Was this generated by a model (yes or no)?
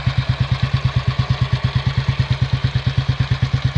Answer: no